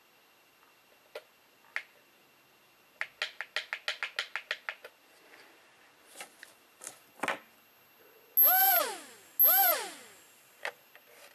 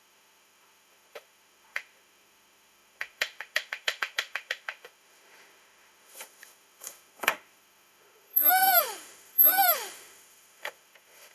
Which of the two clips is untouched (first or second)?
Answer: first